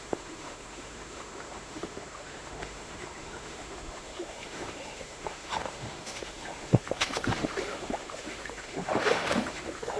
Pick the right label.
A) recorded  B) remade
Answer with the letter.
B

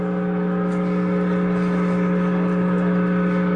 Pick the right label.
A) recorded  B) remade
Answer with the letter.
A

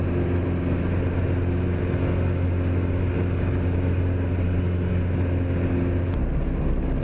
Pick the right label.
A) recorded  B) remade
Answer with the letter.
A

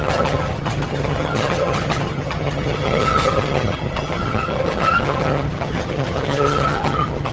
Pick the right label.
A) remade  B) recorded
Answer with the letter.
A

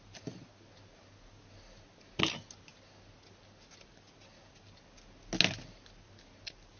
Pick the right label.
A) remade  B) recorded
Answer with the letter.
B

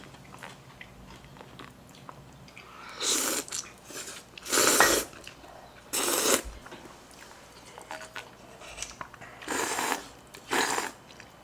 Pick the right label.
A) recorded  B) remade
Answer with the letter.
A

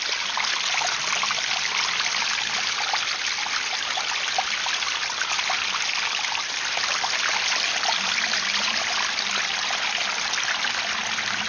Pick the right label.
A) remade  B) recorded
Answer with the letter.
B